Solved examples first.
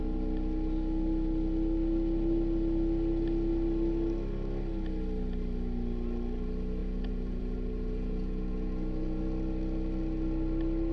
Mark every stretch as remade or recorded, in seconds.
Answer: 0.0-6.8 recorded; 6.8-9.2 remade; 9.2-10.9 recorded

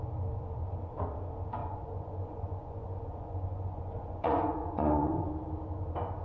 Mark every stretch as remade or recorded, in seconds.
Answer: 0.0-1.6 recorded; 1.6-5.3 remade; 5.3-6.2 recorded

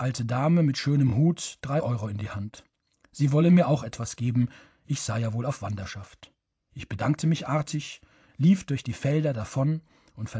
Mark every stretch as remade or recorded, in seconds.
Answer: 0.0-2.2 recorded; 2.2-4.9 remade; 4.9-6.5 recorded; 6.5-7.0 remade; 7.0-7.4 recorded; 7.4-8.6 remade; 8.6-10.4 recorded